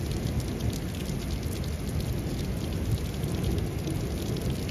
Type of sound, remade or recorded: recorded